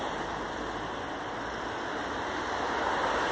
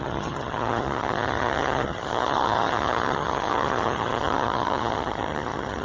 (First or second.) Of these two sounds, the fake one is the second